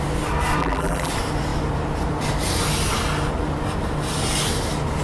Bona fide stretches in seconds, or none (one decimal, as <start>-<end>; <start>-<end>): 0.0-0.6; 1.1-5.0